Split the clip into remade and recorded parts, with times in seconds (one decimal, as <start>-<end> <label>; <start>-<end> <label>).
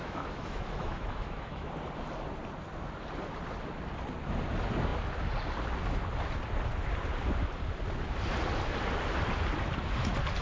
0.0-1.7 remade; 1.7-10.4 recorded